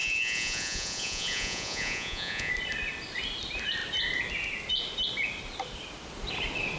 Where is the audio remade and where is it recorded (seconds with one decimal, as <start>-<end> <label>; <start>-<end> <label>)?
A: 0.0-2.5 remade; 2.5-6.8 recorded